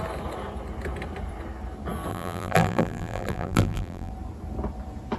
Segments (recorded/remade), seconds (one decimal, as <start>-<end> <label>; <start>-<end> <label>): 0.0-2.1 recorded; 2.1-4.1 remade; 4.1-5.2 recorded